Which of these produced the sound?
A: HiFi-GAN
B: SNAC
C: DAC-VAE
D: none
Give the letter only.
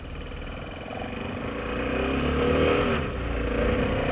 D